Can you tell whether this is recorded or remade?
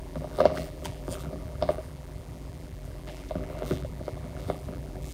remade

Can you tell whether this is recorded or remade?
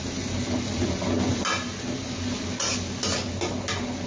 recorded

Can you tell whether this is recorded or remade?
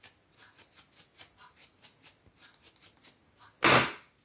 recorded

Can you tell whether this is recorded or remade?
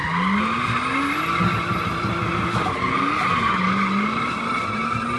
recorded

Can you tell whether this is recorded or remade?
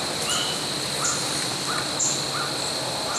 recorded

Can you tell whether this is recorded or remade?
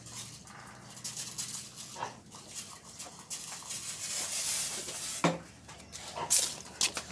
recorded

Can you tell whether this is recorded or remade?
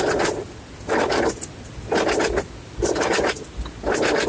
recorded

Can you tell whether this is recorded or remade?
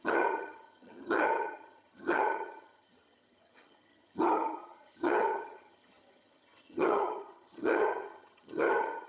remade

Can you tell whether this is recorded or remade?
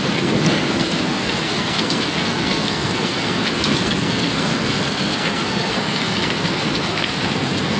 remade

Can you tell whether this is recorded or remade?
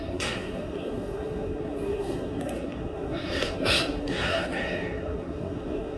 remade